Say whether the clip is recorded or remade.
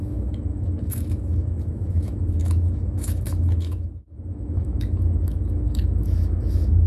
remade